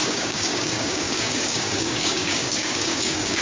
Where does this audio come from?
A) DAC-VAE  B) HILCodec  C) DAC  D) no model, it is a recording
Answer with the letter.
C